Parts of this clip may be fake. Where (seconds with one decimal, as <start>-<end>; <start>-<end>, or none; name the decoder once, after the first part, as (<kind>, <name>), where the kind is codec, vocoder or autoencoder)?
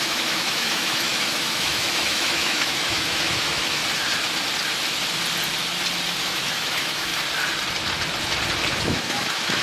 0.0-3.8 (autoencoder, DAC-VAE); 6.2-7.1; 8.8-9.6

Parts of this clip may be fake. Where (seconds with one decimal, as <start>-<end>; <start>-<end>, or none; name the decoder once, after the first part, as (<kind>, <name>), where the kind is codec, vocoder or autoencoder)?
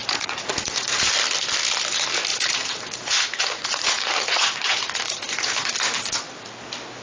0.0-1.1 (vocoder, Vocos); 2.3-5.7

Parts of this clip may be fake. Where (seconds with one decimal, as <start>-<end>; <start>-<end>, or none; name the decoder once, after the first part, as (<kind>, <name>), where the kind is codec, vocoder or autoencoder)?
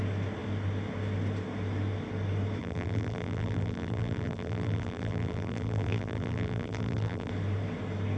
2.6-7.3 (vocoder, BigVGAN v2)